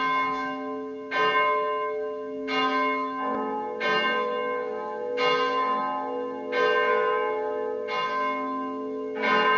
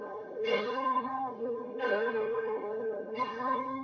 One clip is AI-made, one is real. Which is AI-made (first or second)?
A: second